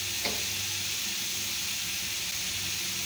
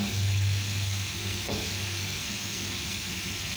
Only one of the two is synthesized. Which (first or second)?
second